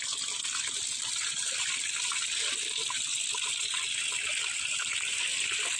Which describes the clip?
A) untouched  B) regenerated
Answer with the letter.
A